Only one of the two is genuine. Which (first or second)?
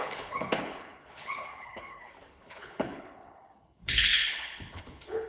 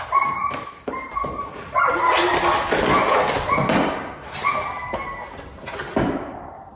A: second